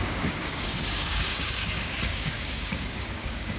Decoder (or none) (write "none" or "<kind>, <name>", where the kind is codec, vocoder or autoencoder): codec, DAC